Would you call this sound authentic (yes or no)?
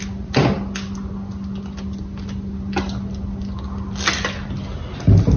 yes